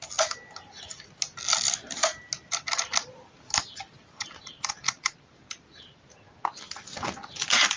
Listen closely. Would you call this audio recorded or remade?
recorded